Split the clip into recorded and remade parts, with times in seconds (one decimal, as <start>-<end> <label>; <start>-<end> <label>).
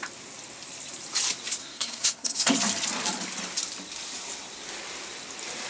0.0-1.6 recorded; 1.6-2.5 remade; 2.5-5.7 recorded